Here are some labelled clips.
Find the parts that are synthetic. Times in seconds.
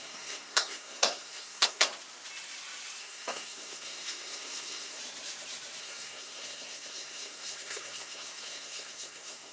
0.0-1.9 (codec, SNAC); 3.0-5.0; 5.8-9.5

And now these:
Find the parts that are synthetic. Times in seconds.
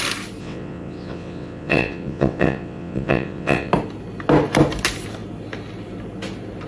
0.4-3.7 (vocoder, WaveNeXt)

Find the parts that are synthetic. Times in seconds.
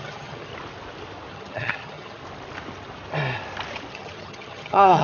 0.0-0.5 (vocoder, HiFi-GAN); 1.3-2.2; 3.9-5.0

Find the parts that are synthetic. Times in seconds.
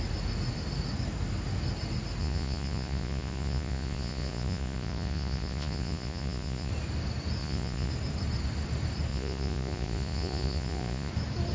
2.2-6.7 (vocoder, Vocos); 7.4-7.9; 9.1-11.1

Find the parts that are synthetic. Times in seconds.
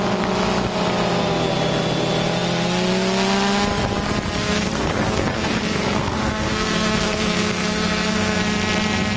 4.4-8.4 (codec, SNAC)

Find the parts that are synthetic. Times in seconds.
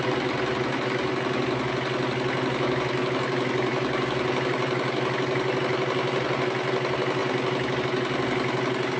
none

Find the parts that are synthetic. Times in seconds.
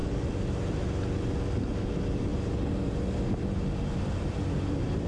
none